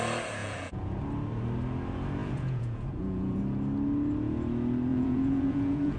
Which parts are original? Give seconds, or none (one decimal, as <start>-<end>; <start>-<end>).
0.0-0.4; 1.0-2.2; 3.4-4.9

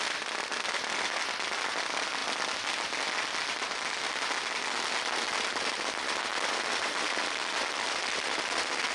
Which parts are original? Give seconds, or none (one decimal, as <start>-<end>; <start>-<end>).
0.0-2.2; 4.3-8.9

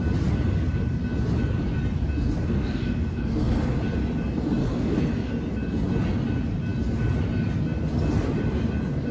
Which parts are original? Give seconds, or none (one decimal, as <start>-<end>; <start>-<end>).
0.0-2.4; 3.8-4.6; 5.3-9.1